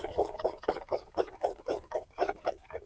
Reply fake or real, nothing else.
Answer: fake